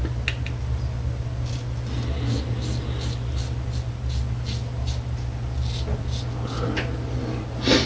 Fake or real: real